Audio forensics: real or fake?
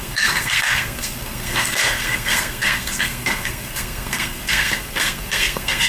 fake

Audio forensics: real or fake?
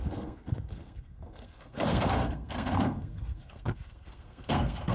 fake